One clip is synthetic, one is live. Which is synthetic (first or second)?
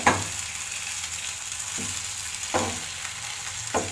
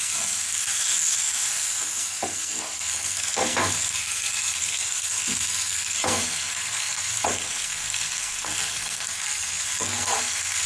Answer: second